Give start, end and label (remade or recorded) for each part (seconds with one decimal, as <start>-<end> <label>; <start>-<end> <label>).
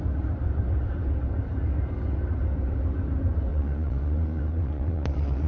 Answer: 0.0-3.5 recorded; 3.5-5.5 remade